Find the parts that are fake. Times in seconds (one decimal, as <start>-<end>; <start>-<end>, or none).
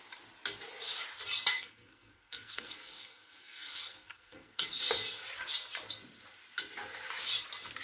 1.5-4.8